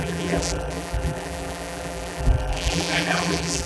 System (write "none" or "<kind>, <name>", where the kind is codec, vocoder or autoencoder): vocoder, BigVGAN v2